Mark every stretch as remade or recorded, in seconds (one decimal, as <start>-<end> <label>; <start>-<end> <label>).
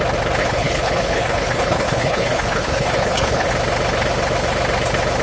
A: 0.0-0.4 recorded; 0.4-3.5 remade; 3.5-5.2 recorded